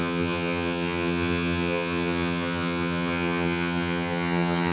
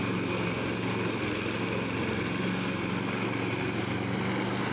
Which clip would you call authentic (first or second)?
second